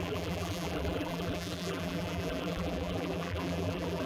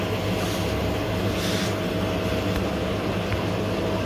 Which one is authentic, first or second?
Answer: second